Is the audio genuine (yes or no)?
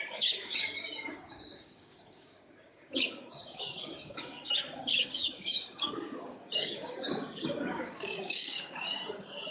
no